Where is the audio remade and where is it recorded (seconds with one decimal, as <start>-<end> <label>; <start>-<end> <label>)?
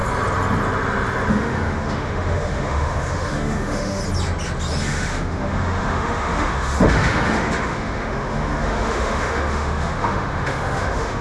0.0-1.3 recorded; 1.3-4.0 remade; 4.0-4.8 recorded; 4.8-11.2 remade